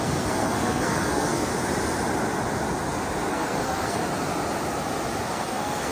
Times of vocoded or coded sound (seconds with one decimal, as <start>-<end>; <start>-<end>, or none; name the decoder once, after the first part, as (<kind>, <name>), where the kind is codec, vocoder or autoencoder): 0.0-1.5 (codec, SNAC); 3.3-4.0; 5.2-5.9